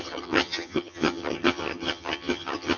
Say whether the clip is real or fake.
fake